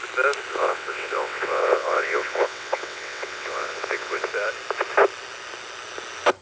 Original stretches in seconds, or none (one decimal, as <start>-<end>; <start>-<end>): 0.0-0.5; 4.3-6.4